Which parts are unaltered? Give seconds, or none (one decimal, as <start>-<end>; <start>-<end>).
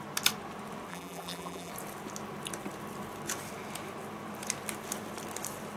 0.0-0.9; 1.7-5.8